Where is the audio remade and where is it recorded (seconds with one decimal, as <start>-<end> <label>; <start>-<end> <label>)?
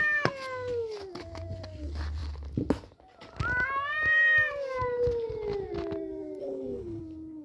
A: 0.0-6.4 recorded; 6.4-7.0 remade; 7.0-7.4 recorded